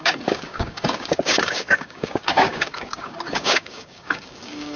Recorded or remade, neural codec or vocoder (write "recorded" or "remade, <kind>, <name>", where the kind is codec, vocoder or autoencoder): remade, codec, DAC